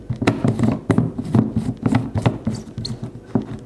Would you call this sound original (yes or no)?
yes